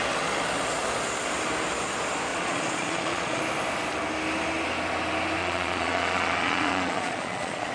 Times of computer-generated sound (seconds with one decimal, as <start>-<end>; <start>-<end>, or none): 2.3-3.4; 5.4-7.7